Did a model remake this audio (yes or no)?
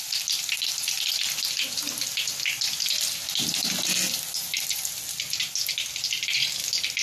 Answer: no